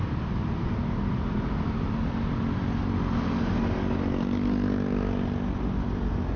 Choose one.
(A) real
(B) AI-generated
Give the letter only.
A